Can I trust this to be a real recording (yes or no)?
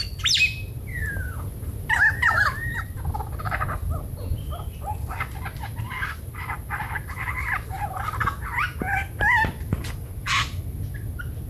yes